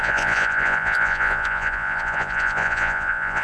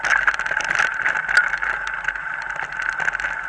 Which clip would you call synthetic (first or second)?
first